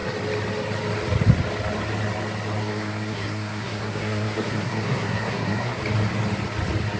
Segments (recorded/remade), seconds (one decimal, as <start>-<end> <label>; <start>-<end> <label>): 0.0-2.6 recorded; 2.6-5.8 remade; 5.8-7.0 recorded